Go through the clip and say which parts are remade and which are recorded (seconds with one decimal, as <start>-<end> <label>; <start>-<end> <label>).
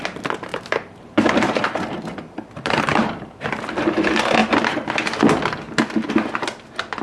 0.0-0.5 recorded; 0.5-4.0 remade; 4.0-7.0 recorded